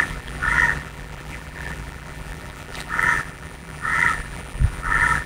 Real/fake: fake